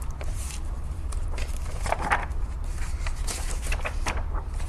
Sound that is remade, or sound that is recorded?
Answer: remade